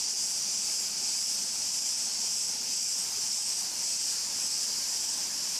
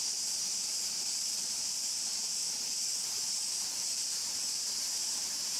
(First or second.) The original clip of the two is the first